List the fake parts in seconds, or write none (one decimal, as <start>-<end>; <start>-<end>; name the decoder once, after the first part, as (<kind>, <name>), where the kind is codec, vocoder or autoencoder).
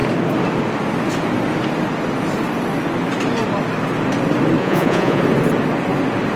4.6-5.2 (vocoder, Vocos)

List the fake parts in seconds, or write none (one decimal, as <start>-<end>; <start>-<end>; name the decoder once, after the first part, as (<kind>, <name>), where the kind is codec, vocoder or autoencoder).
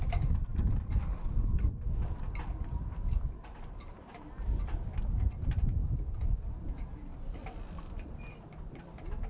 7.1-8.8 (vocoder, BigVGAN v2)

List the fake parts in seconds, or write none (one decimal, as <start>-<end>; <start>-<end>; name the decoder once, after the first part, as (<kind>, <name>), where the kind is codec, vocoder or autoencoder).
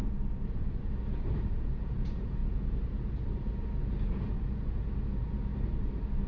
0.9-5.5 (vocoder, Vocos)